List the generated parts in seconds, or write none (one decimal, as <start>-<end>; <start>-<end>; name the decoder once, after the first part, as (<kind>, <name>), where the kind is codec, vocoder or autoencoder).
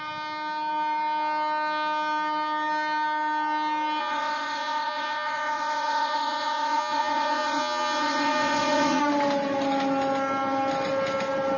4.0-9.0 (vocoder, Vocos)